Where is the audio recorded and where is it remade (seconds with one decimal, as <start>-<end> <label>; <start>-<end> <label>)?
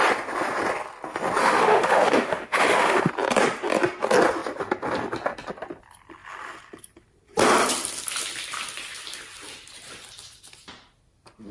0.0-1.4 recorded; 1.4-3.1 remade; 3.1-11.5 recorded